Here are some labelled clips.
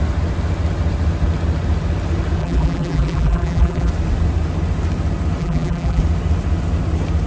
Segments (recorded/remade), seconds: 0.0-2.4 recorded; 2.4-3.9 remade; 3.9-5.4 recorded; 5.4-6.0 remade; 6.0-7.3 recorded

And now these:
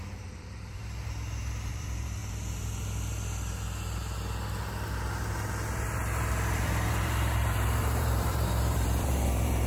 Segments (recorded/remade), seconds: 0.0-0.8 remade; 0.8-1.7 recorded; 1.7-2.2 remade; 2.2-6.9 recorded; 6.9-9.7 remade

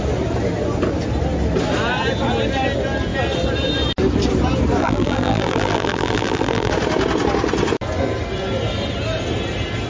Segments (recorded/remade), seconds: 0.0-4.8 recorded; 4.8-6.7 remade; 6.7-9.9 recorded

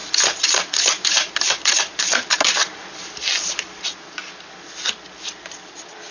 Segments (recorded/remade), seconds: 0.0-3.0 remade; 3.0-6.1 recorded